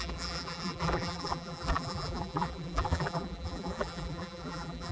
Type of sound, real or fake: fake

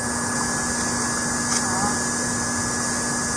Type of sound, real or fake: real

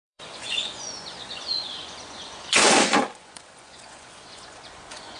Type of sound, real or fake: fake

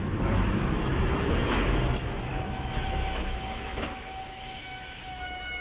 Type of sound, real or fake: fake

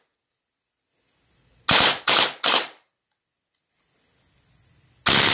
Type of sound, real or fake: real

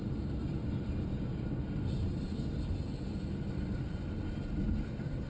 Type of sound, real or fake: real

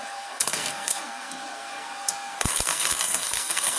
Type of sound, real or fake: fake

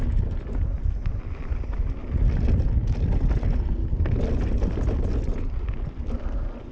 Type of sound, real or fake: real